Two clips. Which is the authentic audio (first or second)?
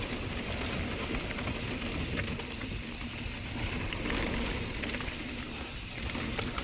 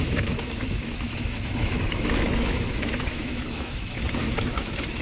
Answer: first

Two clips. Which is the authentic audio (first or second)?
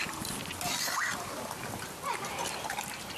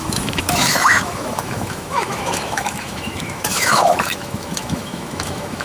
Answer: first